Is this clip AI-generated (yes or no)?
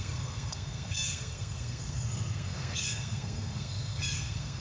yes